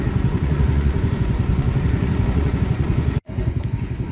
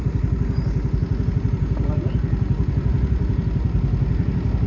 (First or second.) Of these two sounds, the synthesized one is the first